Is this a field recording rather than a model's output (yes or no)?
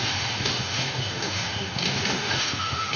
no